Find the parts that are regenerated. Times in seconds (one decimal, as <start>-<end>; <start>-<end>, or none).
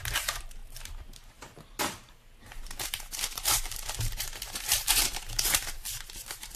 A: 0.0-6.6